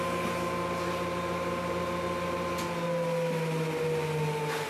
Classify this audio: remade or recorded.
recorded